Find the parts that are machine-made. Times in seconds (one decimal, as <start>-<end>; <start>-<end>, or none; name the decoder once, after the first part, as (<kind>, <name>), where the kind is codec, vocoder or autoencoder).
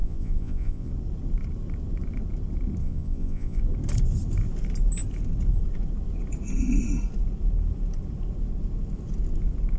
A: 0.0-0.9 (vocoder, Vocos); 2.8-3.6